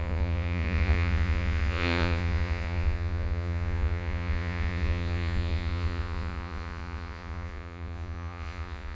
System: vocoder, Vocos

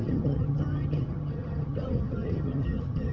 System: vocoder, HiFi-GAN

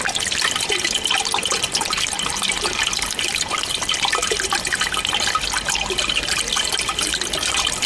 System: none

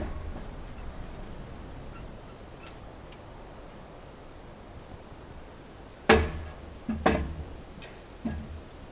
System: none